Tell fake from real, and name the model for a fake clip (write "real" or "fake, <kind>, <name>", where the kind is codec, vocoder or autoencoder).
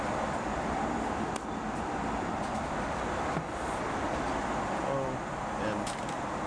real